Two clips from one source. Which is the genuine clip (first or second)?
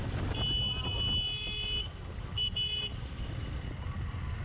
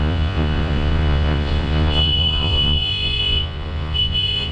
first